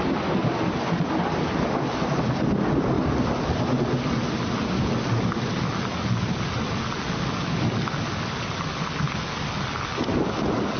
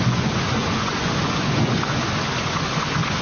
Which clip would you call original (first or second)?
first